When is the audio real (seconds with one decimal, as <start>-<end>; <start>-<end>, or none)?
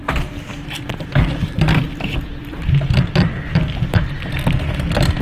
0.0-5.2